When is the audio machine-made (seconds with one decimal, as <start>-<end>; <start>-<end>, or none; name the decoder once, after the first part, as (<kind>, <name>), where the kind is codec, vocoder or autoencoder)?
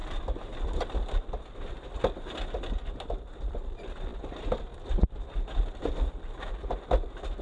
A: none